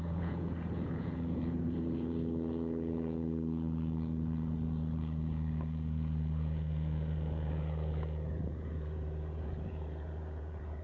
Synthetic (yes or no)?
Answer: yes